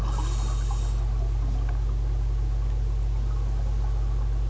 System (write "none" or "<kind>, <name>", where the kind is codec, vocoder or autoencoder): none